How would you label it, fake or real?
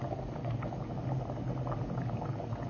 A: real